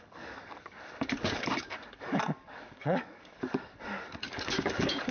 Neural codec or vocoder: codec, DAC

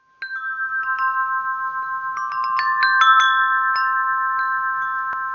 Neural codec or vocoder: none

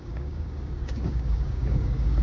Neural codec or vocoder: codec, DAC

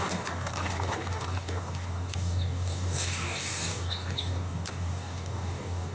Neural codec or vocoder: codec, DAC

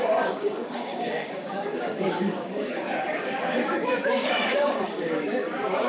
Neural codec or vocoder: codec, DAC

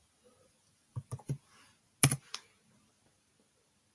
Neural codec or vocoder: none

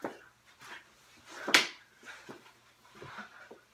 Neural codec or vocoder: none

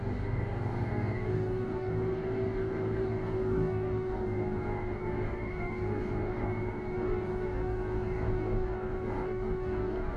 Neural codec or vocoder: codec, DAC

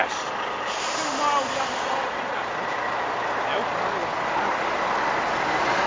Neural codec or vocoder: none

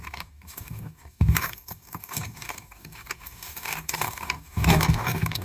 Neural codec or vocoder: codec, DAC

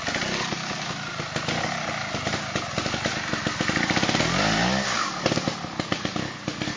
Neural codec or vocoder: none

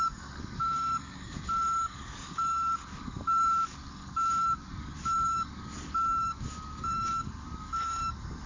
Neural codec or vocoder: codec, DAC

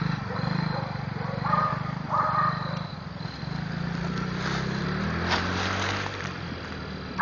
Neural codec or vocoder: none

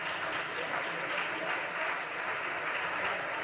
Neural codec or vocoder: none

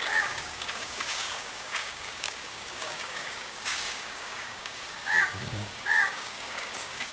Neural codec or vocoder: codec, DAC